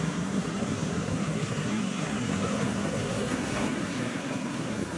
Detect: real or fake fake